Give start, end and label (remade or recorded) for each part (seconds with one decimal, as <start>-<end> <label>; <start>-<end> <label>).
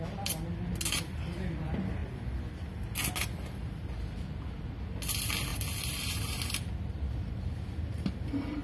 0.0-8.6 recorded